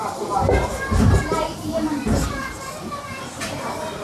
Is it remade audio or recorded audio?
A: remade